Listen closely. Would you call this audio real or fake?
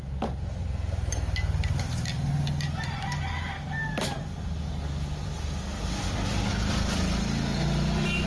real